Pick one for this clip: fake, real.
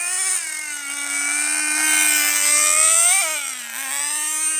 real